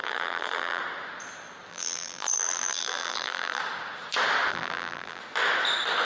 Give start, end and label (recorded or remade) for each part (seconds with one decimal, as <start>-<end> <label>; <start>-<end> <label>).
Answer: 0.0-0.8 remade; 0.8-1.7 recorded; 1.7-3.6 remade; 3.6-4.5 recorded; 4.5-5.2 remade; 5.2-6.0 recorded